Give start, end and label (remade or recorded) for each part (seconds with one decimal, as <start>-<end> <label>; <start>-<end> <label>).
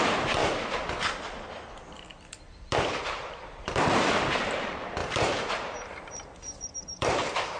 0.0-0.4 remade; 0.4-3.4 recorded; 3.4-7.6 remade